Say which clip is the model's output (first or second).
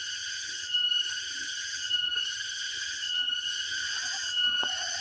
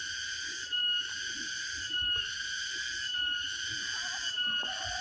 first